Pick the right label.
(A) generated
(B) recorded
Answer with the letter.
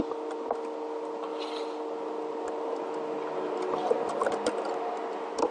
B